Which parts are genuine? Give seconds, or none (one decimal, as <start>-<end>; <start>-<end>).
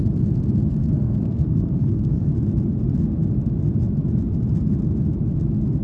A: 0.0-0.8; 2.3-5.8